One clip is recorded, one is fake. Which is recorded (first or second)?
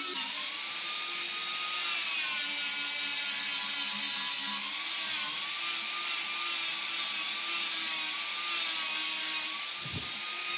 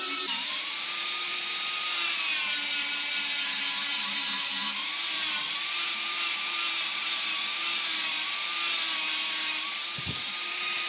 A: first